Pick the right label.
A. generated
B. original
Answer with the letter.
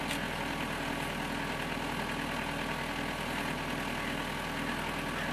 B